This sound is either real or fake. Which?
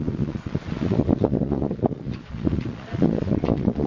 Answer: fake